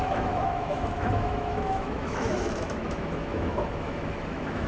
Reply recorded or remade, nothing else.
remade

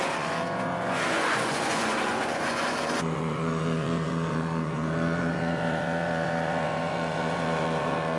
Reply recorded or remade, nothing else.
remade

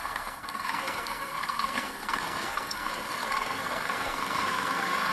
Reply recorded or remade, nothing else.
remade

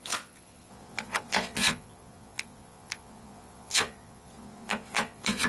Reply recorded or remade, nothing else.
remade